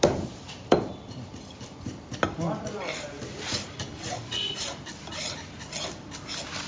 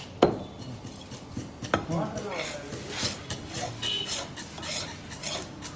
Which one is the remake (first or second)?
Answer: first